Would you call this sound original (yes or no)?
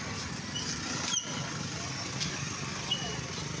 yes